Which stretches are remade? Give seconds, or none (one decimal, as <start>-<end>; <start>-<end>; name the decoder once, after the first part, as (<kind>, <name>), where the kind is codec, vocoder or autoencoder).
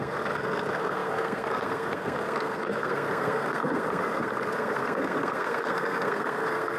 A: 0.0-6.8 (codec, SNAC)